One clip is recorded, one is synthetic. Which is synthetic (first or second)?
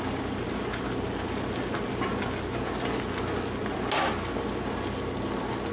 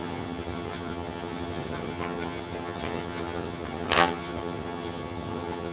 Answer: second